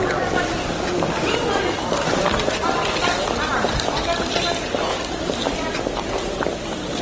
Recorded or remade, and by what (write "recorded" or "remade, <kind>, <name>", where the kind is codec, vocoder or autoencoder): recorded